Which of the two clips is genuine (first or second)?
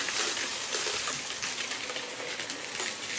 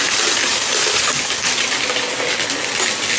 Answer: second